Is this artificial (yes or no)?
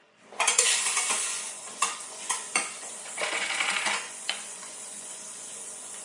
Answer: yes